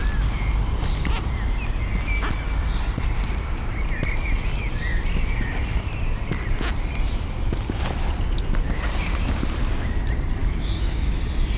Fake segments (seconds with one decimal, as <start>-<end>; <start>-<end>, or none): 10.4-11.2